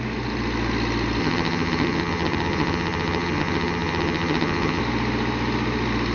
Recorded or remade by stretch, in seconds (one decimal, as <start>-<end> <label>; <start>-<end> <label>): 0.0-1.2 recorded; 1.2-4.8 remade; 4.8-6.1 recorded

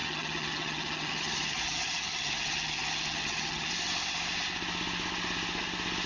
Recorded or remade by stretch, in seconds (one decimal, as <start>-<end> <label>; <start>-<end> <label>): 0.0-3.7 remade; 3.7-6.1 recorded

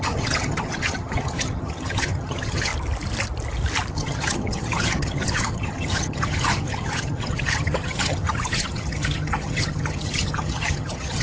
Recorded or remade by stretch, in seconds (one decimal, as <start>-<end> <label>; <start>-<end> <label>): 0.0-2.7 remade; 2.7-3.9 recorded; 3.9-11.2 remade